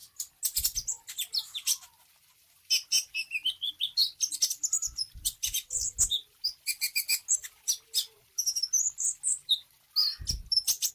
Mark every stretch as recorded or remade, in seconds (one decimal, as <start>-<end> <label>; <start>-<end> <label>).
0.0-10.9 recorded